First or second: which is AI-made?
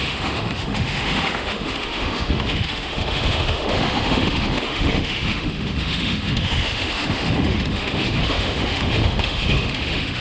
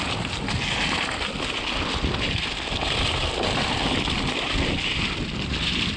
first